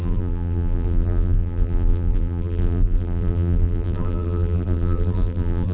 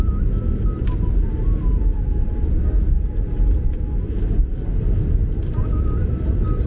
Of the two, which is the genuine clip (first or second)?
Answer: second